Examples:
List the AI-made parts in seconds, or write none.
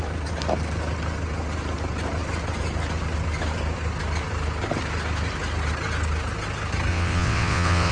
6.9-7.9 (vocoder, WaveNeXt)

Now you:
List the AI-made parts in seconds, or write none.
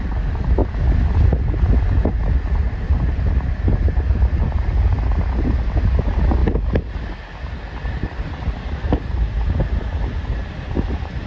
none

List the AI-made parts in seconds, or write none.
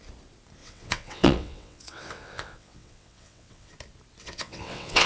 0.6-3.7 (vocoder, WaveNeXt); 4.2-5.1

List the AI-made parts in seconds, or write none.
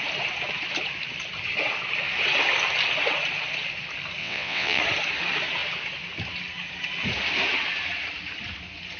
4.2-4.8 (vocoder, WaveNeXt)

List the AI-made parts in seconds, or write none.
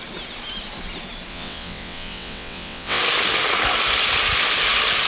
1.3-3.0 (vocoder, WaveNeXt)